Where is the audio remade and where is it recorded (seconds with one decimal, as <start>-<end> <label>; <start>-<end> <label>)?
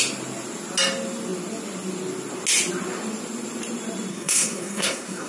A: 0.0-4.1 recorded; 4.1-5.3 remade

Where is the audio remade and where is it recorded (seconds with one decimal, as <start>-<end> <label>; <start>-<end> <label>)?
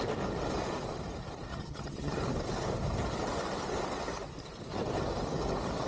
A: 0.0-1.5 recorded; 1.5-2.2 remade; 2.2-5.9 recorded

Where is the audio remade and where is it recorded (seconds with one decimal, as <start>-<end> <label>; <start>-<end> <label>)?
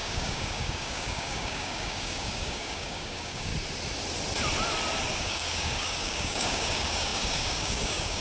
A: 0.0-3.5 remade; 3.5-5.1 recorded; 5.1-8.2 remade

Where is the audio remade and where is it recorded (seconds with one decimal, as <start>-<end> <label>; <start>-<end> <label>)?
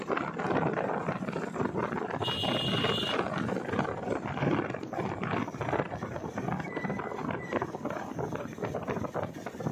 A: 0.0-7.2 remade; 7.2-7.8 recorded; 7.8-9.7 remade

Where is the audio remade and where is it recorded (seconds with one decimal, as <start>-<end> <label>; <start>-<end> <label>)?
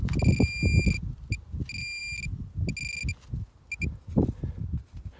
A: 0.0-5.2 recorded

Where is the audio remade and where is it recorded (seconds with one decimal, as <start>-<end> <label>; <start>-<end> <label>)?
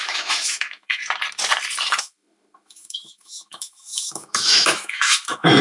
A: 0.0-1.0 remade; 1.0-2.0 recorded; 2.0-5.6 remade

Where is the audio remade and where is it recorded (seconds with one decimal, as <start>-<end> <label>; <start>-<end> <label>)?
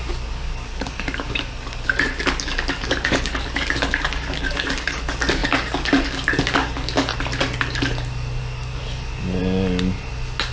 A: 0.0-7.1 remade; 7.1-8.4 recorded; 8.4-9.4 remade; 9.4-10.5 recorded